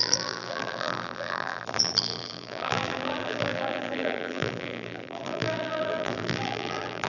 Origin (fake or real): fake